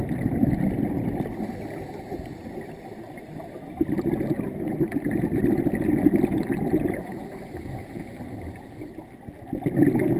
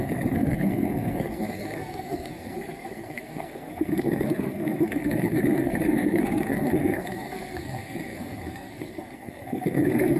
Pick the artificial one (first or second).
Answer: second